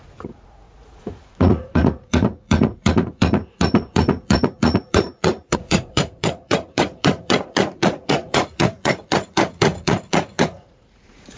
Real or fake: fake